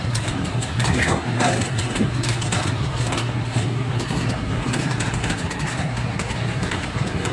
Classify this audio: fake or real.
fake